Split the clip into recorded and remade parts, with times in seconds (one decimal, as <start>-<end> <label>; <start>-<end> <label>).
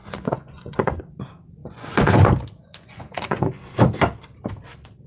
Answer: 0.0-1.0 remade; 1.0-1.6 recorded; 1.6-2.2 remade; 2.2-2.6 recorded; 2.6-3.6 remade; 3.6-5.1 recorded